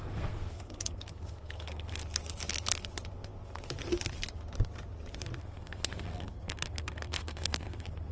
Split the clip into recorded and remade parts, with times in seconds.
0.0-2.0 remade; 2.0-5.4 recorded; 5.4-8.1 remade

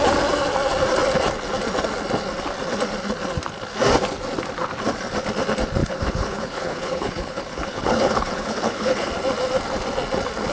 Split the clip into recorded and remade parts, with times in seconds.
0.0-5.8 recorded; 5.8-9.1 remade; 9.1-10.5 recorded

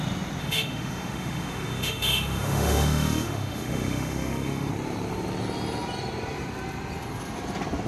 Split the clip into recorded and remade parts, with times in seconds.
0.0-0.4 recorded; 0.4-4.7 remade; 4.7-7.9 recorded

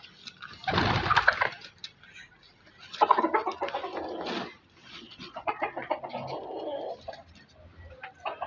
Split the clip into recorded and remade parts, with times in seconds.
0.0-4.8 recorded; 4.8-5.5 remade; 5.5-8.5 recorded

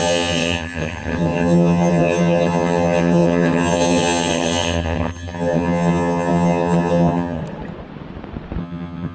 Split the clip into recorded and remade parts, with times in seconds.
0.0-7.4 remade; 7.4-8.6 recorded; 8.6-9.1 remade